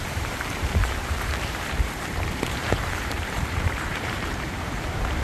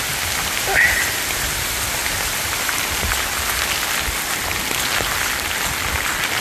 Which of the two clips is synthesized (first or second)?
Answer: first